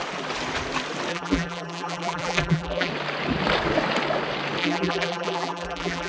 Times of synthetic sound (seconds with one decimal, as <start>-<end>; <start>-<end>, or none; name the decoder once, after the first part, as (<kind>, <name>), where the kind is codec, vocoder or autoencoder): 1.1-2.9 (vocoder, BigVGAN v2); 4.6-6.1